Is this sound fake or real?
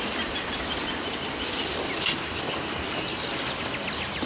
real